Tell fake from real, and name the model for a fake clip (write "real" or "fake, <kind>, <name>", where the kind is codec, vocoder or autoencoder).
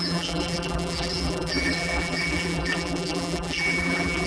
fake, vocoder, BigVGAN v2